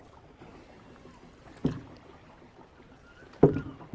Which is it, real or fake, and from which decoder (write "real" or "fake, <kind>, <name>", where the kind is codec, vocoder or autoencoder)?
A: real